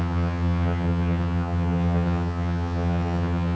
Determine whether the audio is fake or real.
fake